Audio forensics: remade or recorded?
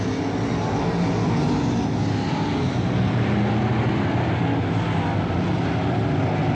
recorded